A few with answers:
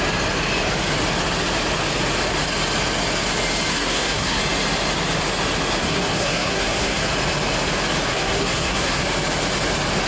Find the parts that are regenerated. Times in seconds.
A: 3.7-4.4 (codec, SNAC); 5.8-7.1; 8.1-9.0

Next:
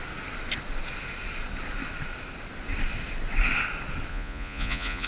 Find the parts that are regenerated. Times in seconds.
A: 4.1-5.1 (vocoder, Vocos)

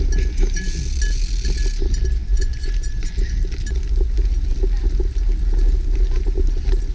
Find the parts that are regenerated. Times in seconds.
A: 2.2-3.1 (vocoder, Vocos)

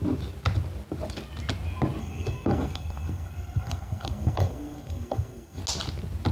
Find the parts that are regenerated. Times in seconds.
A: 2.0-5.6 (codec, SNAC)